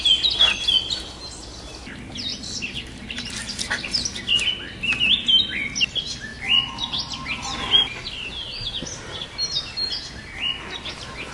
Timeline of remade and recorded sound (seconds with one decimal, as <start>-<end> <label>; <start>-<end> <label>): 0.0-2.3 recorded; 2.3-3.3 remade; 3.3-11.3 recorded